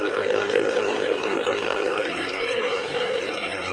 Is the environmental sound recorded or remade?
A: remade